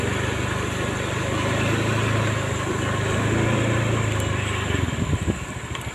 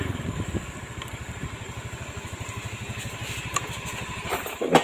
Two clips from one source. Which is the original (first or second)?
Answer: first